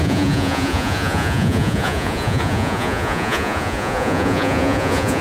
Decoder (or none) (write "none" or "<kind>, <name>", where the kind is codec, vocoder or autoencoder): vocoder, Vocos